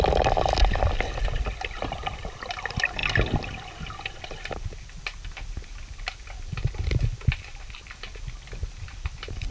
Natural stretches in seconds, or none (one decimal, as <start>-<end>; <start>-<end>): 0.0-9.5